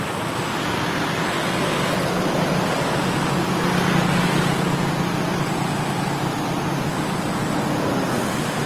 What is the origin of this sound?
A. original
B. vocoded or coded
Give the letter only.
A